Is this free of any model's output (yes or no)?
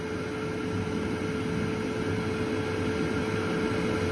yes